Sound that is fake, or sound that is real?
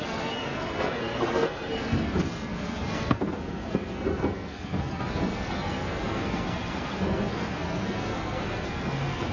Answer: fake